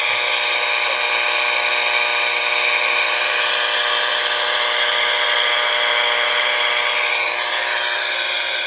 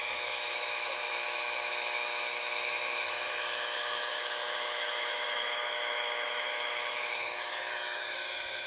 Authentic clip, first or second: first